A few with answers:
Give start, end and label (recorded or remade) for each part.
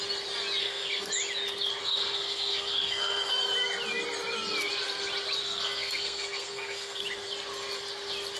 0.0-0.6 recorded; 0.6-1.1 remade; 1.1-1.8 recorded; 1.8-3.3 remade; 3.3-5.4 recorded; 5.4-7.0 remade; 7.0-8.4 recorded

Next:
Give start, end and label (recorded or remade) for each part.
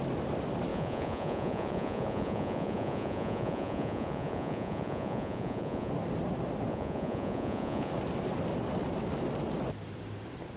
0.0-0.7 recorded; 0.7-5.9 remade; 5.9-6.7 recorded; 6.7-7.9 remade; 7.9-10.6 recorded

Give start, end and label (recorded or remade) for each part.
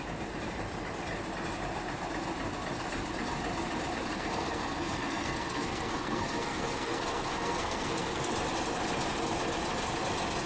0.0-4.1 recorded; 4.1-8.3 remade; 8.3-10.5 recorded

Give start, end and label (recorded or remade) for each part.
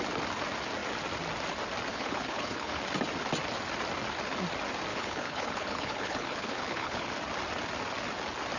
0.0-1.9 recorded; 1.9-2.8 remade; 2.8-4.9 recorded; 4.9-7.1 remade; 7.1-8.6 recorded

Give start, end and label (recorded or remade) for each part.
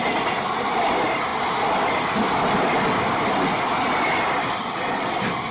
0.0-5.5 recorded